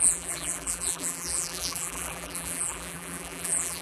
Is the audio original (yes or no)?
no